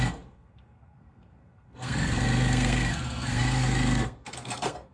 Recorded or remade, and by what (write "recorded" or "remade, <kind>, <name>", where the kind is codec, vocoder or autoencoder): remade, codec, SNAC